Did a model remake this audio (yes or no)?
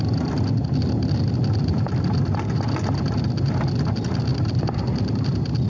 no